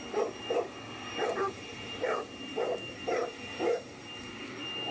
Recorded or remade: recorded